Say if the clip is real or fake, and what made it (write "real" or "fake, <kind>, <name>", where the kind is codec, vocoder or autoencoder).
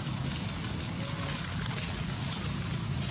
real